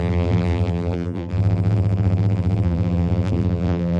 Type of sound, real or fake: fake